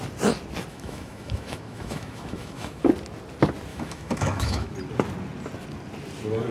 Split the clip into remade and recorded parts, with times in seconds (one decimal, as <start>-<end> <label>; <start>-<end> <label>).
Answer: 0.0-0.7 recorded; 0.7-2.8 remade; 2.8-3.7 recorded; 3.7-4.7 remade; 4.7-6.5 recorded